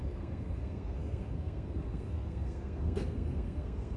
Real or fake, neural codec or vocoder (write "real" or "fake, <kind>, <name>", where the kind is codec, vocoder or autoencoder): fake, codec, SNAC